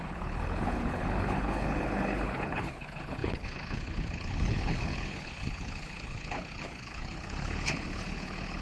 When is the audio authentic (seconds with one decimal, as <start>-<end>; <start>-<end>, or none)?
none